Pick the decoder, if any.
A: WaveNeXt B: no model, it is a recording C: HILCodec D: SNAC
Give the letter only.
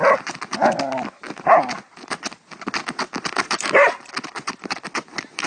B